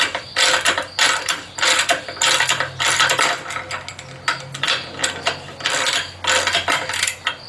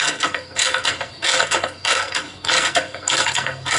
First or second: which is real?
first